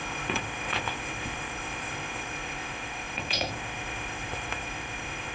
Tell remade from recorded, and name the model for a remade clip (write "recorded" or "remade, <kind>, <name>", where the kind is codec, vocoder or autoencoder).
remade, codec, ZipCodec